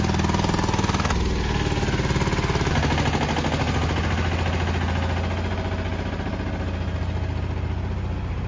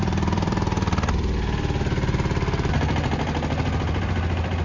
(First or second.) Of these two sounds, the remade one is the second